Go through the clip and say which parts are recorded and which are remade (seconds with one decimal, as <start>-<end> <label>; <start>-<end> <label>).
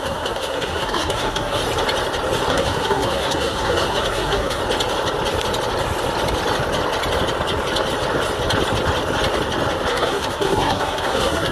0.0-1.6 remade; 1.6-2.5 recorded; 2.5-4.6 remade; 4.6-9.9 recorded; 9.9-11.5 remade